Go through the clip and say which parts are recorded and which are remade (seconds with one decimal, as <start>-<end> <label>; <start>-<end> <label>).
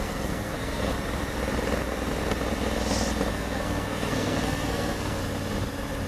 0.0-0.9 remade; 0.9-3.3 recorded; 3.3-5.2 remade; 5.2-6.1 recorded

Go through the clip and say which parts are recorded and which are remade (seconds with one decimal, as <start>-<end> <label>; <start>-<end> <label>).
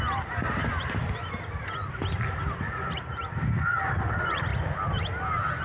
0.0-0.6 recorded; 0.6-2.6 remade; 2.6-5.6 recorded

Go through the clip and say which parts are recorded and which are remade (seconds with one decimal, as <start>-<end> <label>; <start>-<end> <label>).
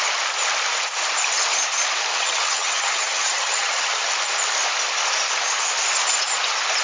0.0-2.1 recorded; 2.1-4.1 remade; 4.1-6.8 recorded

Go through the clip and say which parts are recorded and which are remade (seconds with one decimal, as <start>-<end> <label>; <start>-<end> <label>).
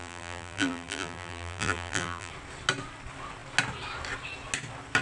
0.0-2.3 remade; 2.3-5.0 recorded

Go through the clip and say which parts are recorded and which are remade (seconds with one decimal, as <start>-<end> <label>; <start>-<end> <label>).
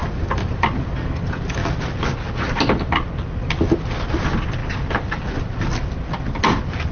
0.0-6.9 recorded